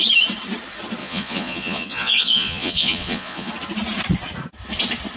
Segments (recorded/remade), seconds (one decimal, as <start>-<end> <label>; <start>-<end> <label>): 0.0-1.0 recorded; 1.0-3.5 remade; 3.5-5.2 recorded